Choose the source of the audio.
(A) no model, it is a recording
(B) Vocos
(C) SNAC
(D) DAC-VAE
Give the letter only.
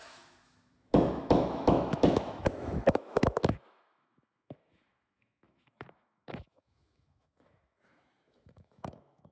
D